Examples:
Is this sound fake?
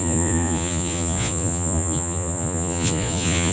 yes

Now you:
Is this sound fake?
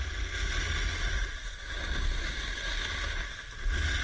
no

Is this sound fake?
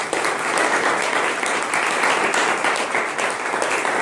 no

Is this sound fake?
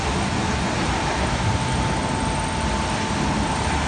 no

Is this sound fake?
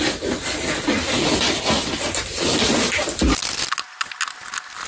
no